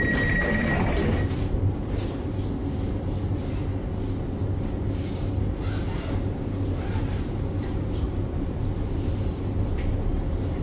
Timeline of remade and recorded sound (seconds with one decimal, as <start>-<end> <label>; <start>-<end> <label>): 0.0-10.6 recorded